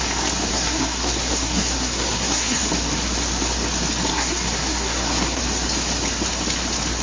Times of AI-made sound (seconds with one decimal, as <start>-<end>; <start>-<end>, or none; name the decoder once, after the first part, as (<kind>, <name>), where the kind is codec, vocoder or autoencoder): 0.5-2.6 (codec, SNAC); 4.1-5.4